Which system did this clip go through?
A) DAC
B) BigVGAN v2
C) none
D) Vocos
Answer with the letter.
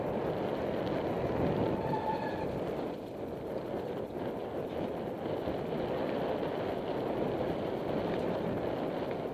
C